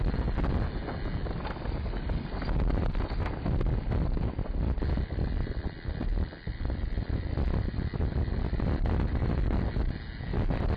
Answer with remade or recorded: recorded